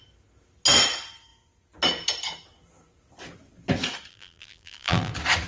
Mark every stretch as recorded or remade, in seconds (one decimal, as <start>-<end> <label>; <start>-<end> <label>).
0.0-4.1 recorded; 4.1-5.1 remade; 5.1-5.5 recorded